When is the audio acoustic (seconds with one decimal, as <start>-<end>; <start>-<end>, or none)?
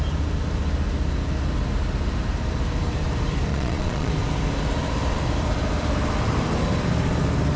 0.0-3.5; 4.1-7.6